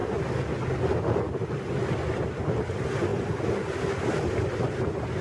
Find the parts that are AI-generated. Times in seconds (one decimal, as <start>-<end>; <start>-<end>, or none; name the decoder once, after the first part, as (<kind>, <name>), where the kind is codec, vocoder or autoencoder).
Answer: none